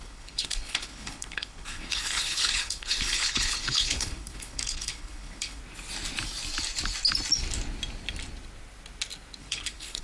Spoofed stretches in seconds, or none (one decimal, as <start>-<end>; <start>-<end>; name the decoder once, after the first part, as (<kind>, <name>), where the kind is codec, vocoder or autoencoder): 0.0-5.6 (codec, HILCodec); 9.4-10.0